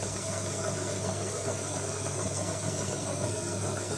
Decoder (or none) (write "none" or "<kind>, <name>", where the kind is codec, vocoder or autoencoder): codec, SNAC